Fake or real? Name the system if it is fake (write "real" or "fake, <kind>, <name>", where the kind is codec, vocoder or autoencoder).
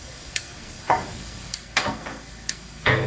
fake, codec, SNAC